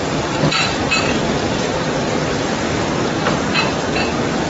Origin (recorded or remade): recorded